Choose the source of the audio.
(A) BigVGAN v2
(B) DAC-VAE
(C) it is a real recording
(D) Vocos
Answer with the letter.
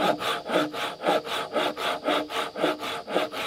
C